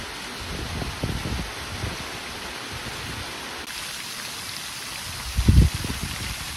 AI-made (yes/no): no